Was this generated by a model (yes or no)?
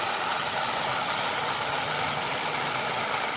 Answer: no